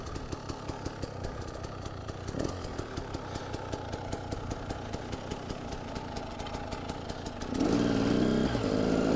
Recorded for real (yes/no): yes